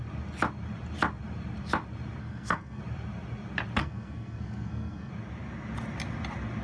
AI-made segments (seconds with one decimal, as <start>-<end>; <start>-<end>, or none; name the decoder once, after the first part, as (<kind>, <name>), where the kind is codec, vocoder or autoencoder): 2.2-2.8 (codec, SNAC); 3.8-5.1